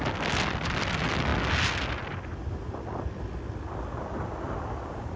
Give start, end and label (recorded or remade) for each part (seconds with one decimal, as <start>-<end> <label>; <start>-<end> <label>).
0.0-5.2 recorded